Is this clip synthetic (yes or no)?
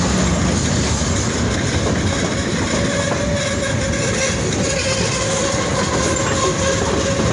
no